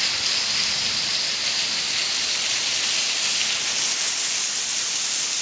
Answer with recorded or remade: recorded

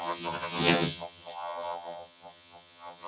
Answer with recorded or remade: remade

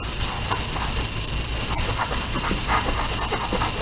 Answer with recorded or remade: recorded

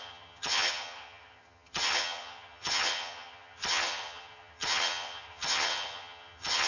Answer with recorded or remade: remade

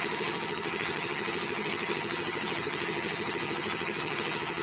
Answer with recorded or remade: remade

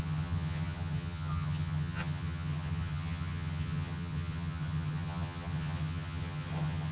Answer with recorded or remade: remade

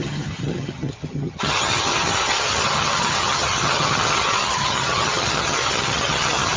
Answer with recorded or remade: remade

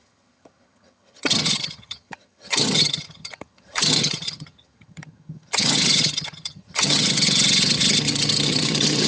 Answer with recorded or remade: remade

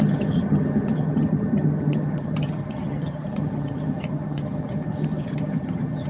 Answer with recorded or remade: remade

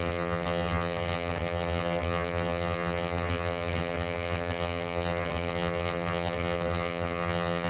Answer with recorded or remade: remade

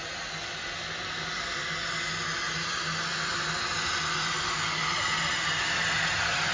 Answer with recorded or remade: recorded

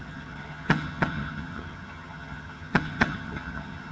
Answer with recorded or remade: remade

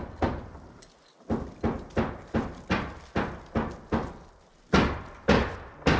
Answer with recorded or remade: recorded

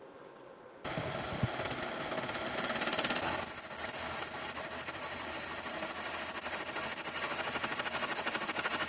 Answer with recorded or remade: recorded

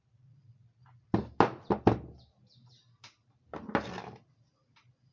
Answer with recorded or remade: recorded